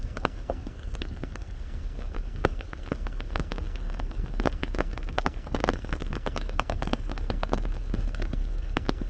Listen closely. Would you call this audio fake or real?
fake